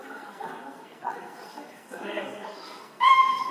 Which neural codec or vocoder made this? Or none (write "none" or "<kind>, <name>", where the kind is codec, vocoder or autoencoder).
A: codec, SNAC